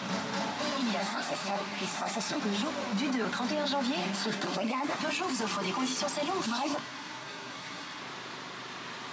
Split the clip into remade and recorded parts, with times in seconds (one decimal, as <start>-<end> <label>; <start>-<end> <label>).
0.0-1.0 recorded; 1.0-2.4 remade; 2.4-4.0 recorded; 4.0-5.0 remade; 5.0-6.4 recorded; 6.4-8.0 remade; 8.0-9.1 recorded